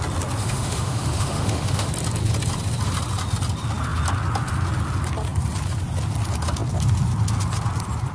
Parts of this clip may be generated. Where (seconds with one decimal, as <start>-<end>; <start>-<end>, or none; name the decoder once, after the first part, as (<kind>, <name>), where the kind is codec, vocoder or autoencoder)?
0.4-1.9 (autoencoder, DAC-VAE)